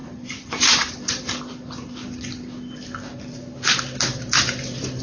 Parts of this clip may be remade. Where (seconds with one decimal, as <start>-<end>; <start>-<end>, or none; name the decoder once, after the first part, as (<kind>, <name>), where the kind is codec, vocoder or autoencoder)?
0.0-1.4 (vocoder, BigVGAN v2); 4.1-5.0